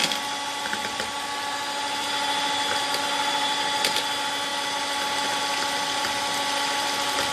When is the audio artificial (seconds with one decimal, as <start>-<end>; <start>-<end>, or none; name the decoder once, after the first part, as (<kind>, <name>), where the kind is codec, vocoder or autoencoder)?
none